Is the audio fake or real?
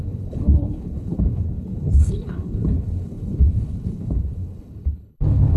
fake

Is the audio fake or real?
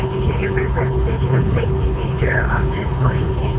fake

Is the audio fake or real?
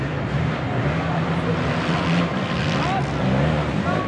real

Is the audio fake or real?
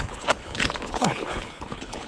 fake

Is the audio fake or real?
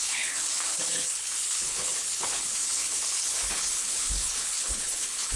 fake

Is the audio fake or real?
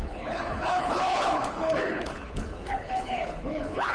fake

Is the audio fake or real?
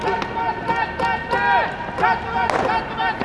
real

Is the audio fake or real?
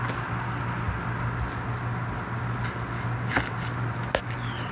real